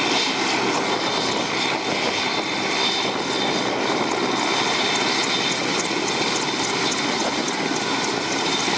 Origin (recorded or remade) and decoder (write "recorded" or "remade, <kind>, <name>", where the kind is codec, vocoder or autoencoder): recorded